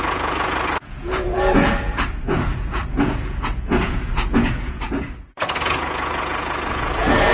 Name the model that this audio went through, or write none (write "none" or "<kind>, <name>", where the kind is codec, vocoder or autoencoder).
vocoder, Vocos